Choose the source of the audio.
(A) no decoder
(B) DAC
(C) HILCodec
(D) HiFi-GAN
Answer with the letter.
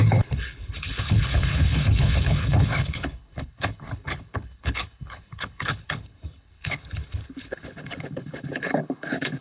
C